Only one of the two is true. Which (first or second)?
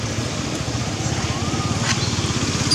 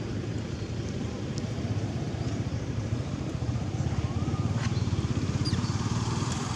first